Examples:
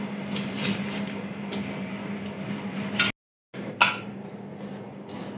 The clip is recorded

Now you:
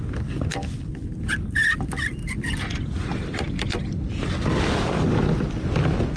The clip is recorded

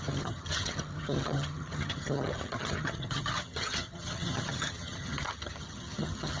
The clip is remade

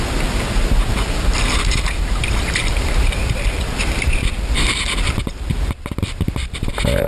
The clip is remade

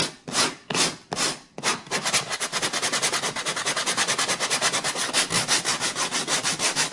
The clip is recorded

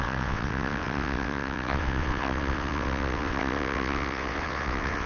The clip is remade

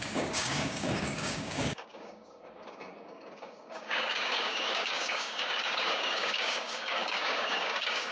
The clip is remade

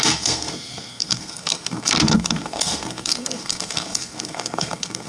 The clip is remade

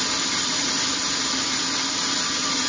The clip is recorded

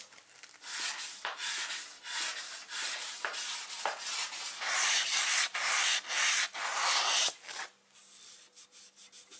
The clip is recorded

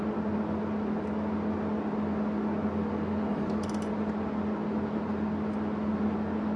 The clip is recorded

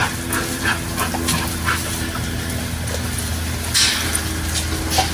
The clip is recorded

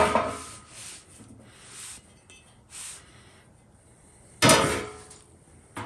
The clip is recorded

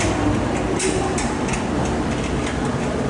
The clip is remade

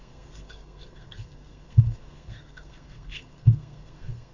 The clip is remade